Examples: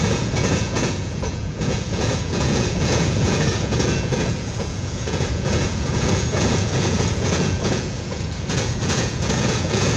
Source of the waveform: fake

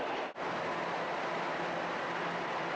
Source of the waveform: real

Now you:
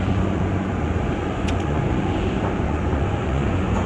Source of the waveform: fake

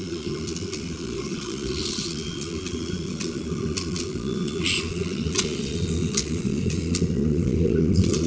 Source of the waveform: fake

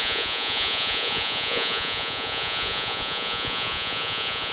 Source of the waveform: fake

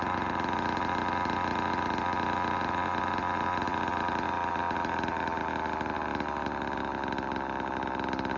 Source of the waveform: real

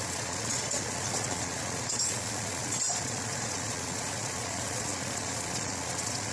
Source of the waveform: fake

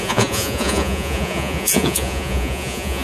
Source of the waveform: fake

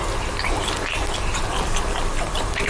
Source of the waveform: real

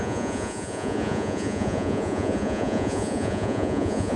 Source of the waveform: fake